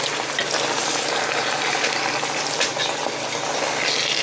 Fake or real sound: real